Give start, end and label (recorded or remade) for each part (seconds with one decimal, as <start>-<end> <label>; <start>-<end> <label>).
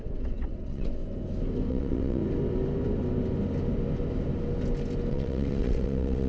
0.0-1.0 remade; 1.0-1.7 recorded; 1.7-2.2 remade; 2.2-5.1 recorded; 5.1-6.3 remade